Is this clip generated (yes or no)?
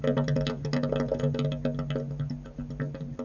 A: no